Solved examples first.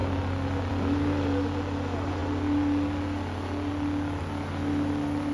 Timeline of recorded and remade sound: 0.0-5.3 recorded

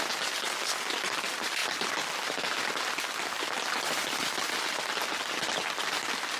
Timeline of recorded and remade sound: 0.0-6.4 recorded

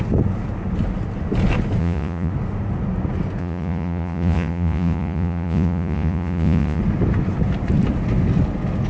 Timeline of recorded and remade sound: 0.0-1.8 recorded; 1.8-2.3 remade; 2.3-3.4 recorded; 3.4-6.8 remade; 6.8-8.9 recorded